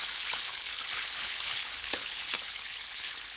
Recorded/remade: remade